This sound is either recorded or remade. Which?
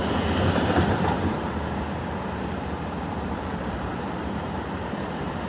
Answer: remade